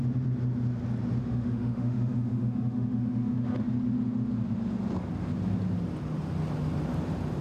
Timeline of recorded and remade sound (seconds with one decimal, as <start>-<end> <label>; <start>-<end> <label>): 0.0-1.2 recorded; 1.2-3.6 remade; 3.6-7.4 recorded